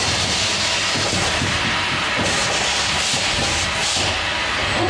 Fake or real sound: real